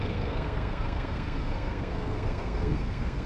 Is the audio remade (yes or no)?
yes